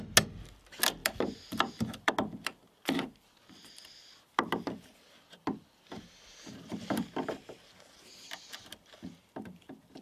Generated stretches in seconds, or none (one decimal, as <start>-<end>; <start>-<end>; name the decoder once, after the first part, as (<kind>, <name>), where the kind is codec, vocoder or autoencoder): 1.0-2.1 (vocoder, BigVGAN v2)